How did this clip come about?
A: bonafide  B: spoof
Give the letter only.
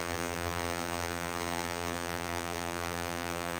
B